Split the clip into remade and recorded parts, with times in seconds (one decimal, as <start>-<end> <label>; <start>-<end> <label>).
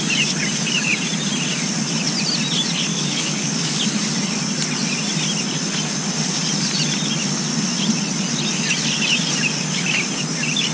0.0-2.9 recorded; 2.9-3.8 remade; 3.8-10.7 recorded